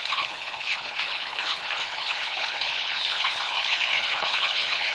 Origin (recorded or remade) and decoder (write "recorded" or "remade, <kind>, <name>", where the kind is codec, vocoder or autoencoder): remade, codec, HILCodec